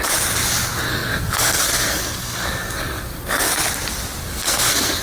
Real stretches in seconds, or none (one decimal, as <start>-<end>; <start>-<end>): 0.0-0.9; 3.4-4.2